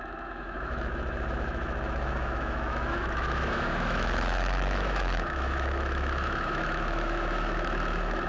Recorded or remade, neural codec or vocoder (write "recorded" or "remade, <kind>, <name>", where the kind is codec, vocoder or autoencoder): remade, autoencoder, DAC-VAE